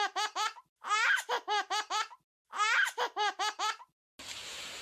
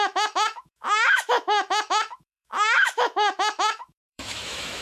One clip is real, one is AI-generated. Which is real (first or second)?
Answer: first